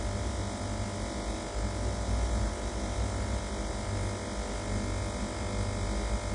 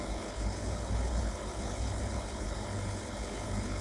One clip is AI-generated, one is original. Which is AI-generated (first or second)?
second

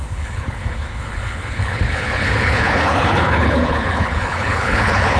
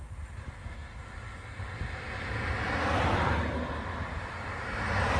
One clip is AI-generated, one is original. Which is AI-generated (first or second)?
first